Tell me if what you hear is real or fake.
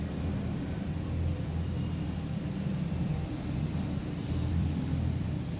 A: fake